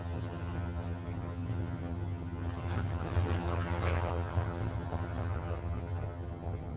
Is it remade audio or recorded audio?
remade